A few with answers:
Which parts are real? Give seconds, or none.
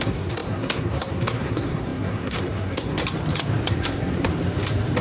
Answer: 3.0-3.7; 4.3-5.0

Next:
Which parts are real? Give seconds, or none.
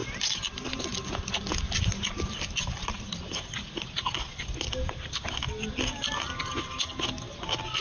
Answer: 0.0-7.8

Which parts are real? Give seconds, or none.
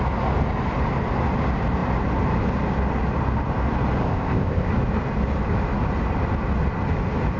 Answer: 0.0-4.0; 4.7-7.4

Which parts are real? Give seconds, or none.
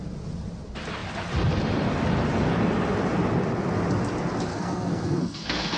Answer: 0.0-4.5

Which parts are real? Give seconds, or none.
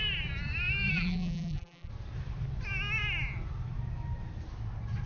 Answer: 0.0-0.9; 1.9-5.1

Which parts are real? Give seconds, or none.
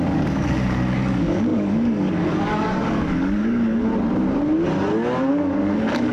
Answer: 3.9-5.3